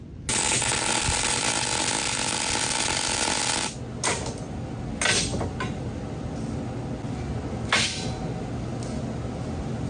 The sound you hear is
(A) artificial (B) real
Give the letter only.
B